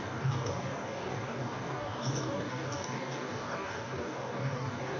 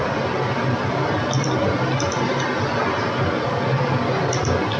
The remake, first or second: first